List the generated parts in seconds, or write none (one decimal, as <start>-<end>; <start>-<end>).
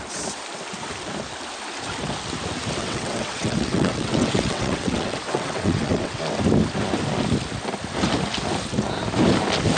2.8-6.2